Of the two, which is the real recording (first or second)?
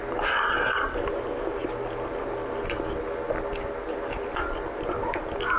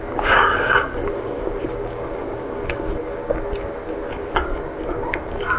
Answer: first